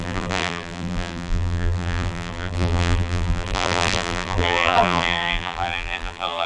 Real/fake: fake